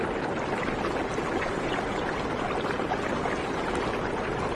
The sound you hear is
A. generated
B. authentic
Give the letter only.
B